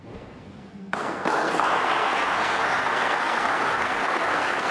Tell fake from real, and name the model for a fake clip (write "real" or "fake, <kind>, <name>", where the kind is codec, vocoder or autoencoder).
fake, codec, SNAC